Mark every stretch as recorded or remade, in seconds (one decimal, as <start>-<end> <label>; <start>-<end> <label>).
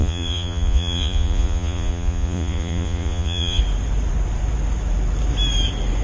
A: 0.0-3.6 remade; 3.6-6.0 recorded